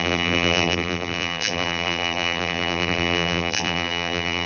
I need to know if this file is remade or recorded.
remade